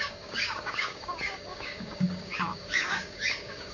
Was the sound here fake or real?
fake